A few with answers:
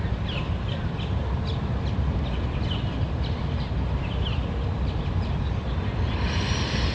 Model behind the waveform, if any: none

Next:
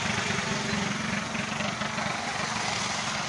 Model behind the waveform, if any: none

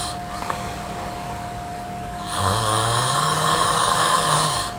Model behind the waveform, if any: codec, DAC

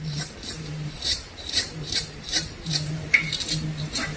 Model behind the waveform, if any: vocoder, BigVGAN v2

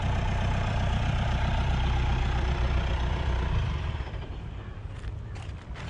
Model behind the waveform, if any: vocoder, BigVGAN v2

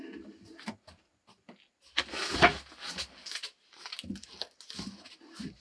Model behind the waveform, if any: none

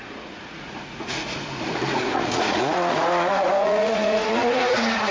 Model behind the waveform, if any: vocoder, Vocos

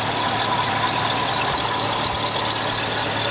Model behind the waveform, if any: none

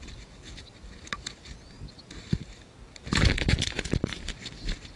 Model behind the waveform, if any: none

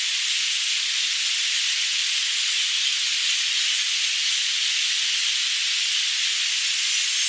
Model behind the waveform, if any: none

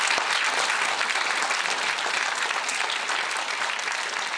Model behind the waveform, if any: none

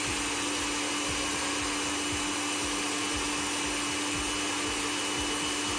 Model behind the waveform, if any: none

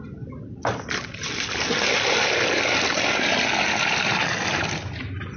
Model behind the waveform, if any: none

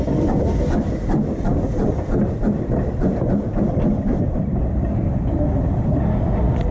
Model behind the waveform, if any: none